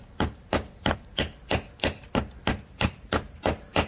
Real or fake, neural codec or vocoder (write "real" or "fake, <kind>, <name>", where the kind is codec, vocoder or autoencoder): real